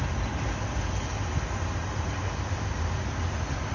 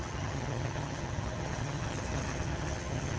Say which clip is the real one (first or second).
first